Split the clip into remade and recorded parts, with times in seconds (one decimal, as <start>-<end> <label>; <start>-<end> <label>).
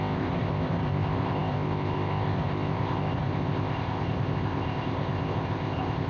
0.0-6.1 remade